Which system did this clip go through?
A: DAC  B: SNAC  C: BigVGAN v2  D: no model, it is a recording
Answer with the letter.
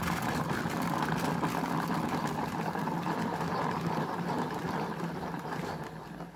D